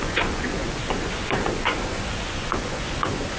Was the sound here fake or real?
fake